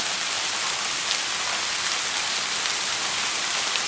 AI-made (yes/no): no